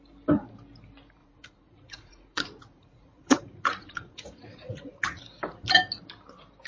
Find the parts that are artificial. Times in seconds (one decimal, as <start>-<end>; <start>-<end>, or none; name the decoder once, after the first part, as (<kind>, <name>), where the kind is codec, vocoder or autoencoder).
1.2-5.2 (vocoder, Vocos)